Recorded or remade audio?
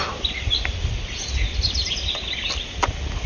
recorded